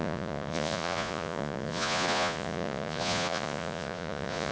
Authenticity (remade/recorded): remade